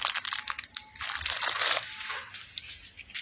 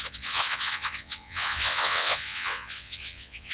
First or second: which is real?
first